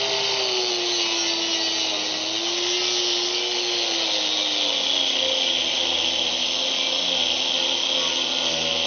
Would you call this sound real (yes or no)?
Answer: yes